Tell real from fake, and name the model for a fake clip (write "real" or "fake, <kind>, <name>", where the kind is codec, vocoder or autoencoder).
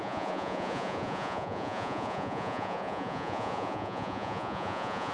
fake, vocoder, Vocos